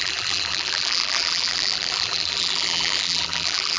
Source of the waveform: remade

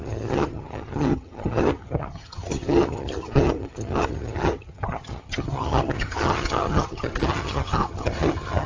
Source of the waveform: remade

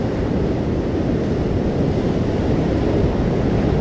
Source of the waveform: recorded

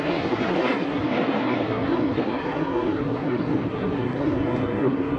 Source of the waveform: remade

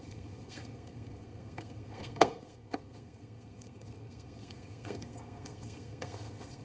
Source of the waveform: remade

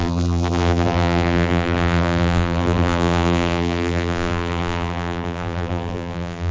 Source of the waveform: remade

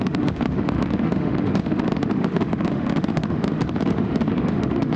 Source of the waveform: remade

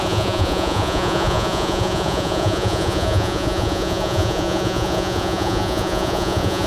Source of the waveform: remade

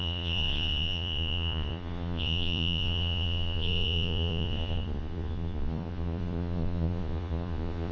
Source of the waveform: remade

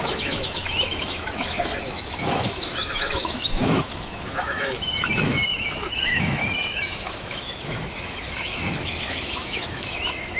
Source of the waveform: remade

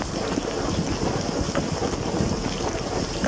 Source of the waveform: recorded